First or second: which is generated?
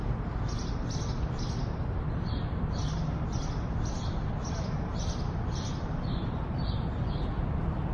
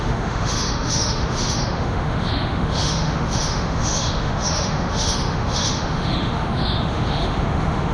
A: second